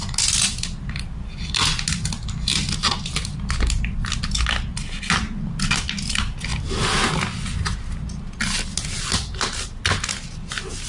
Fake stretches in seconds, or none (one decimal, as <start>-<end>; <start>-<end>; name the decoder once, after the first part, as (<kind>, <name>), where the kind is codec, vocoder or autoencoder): none